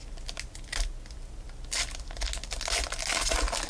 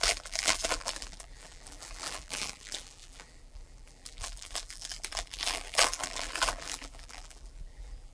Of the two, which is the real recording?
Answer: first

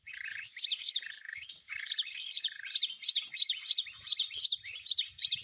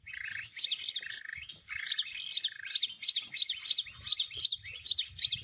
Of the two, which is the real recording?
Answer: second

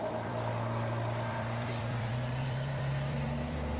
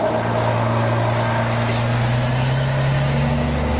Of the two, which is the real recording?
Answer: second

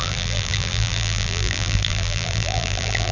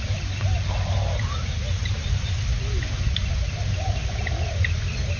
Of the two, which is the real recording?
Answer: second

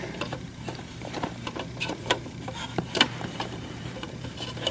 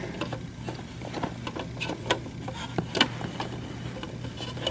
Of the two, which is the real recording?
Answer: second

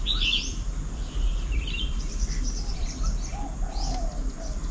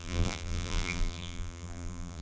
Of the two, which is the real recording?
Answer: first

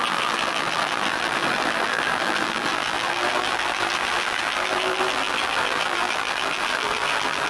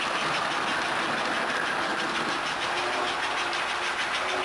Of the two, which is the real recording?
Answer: second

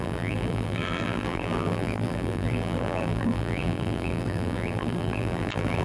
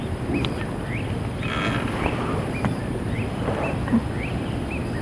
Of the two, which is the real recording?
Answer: second